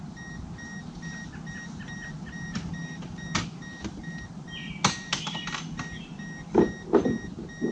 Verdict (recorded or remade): recorded